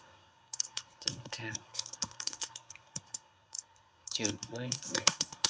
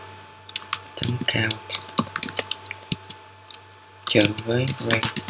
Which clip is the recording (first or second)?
second